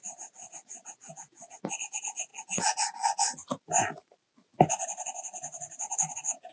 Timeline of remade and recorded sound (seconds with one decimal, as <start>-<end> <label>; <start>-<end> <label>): 0.0-6.5 recorded